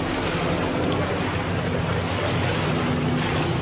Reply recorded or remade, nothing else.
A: recorded